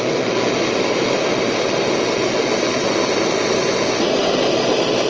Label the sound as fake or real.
real